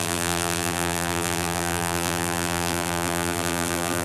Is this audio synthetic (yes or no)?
yes